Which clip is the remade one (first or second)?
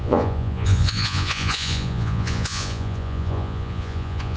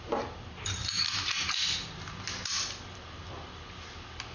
first